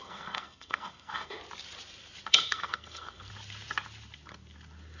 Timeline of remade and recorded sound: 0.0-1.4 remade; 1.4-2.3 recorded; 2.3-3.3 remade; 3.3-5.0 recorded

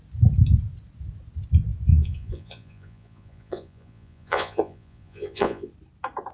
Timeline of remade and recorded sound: 0.0-1.9 recorded; 1.9-5.7 remade; 5.7-6.3 recorded

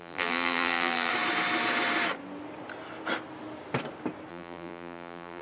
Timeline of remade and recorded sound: 0.0-1.1 remade; 1.1-4.3 recorded; 4.3-5.4 remade